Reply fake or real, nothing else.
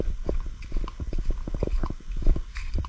real